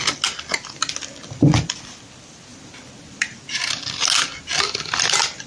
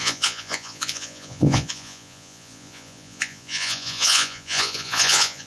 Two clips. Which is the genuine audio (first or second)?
first